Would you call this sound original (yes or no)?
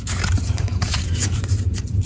no